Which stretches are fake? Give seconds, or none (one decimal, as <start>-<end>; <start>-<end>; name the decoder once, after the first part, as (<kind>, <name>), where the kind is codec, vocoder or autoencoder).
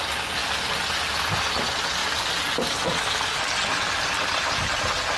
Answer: none